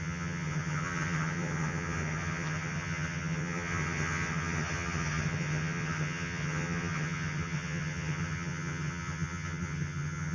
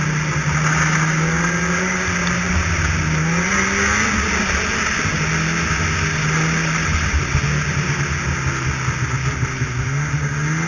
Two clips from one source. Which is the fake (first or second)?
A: first